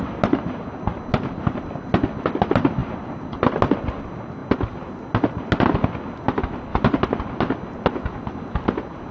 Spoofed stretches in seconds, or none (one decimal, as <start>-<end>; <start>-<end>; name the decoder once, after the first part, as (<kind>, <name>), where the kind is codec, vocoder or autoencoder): none